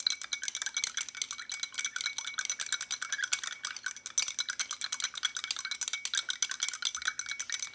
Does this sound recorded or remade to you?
recorded